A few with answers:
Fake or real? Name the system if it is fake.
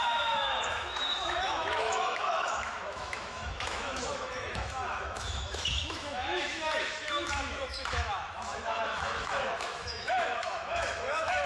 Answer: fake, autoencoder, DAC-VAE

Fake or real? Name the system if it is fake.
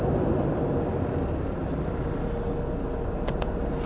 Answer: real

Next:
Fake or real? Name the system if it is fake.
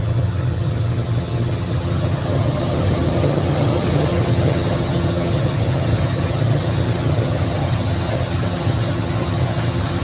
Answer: fake, vocoder, HiFi-GAN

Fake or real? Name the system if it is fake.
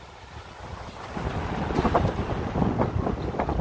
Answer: real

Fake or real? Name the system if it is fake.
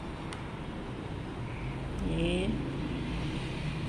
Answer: real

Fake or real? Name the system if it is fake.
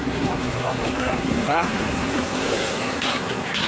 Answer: fake, codec, SNAC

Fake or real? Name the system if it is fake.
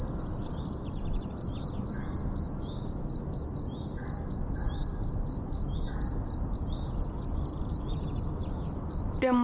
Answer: real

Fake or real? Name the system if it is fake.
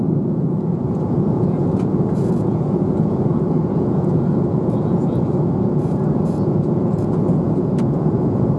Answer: fake, vocoder, Vocos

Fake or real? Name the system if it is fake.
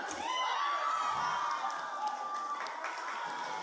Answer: real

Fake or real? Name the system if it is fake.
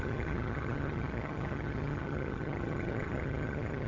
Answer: fake, vocoder, HiFi-GAN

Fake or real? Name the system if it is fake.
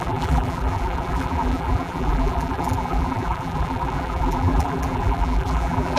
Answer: fake, vocoder, BigVGAN v2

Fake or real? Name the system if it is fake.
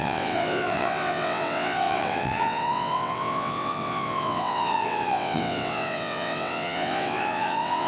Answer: fake, vocoder, WaveNeXt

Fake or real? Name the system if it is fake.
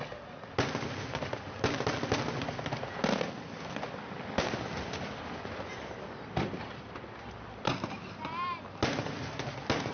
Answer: real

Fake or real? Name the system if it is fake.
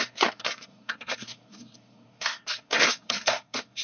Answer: fake, codec, SNAC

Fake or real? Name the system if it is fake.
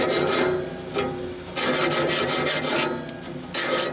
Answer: real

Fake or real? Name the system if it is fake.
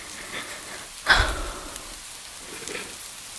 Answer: real